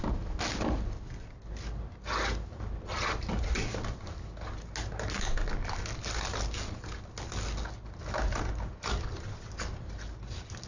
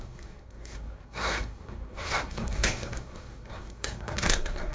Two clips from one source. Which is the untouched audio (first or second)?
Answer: first